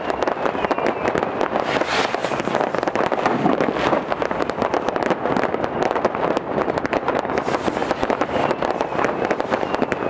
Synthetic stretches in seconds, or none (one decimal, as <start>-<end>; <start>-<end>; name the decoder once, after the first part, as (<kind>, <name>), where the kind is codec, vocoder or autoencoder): none